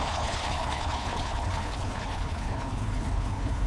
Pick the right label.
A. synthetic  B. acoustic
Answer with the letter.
A